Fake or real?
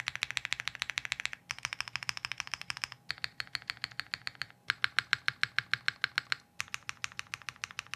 real